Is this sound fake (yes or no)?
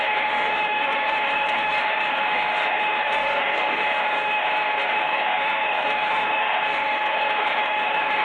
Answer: yes